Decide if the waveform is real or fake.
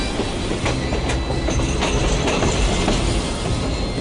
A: real